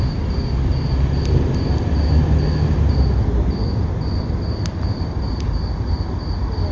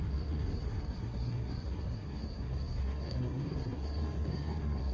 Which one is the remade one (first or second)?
second